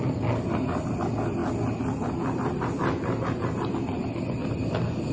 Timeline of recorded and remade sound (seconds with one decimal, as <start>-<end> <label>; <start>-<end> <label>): 0.0-5.1 recorded